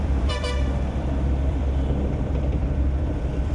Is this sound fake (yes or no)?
yes